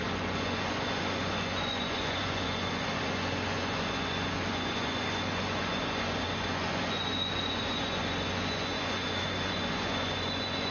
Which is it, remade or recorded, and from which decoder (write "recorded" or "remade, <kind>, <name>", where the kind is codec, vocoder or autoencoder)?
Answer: remade, vocoder, Vocos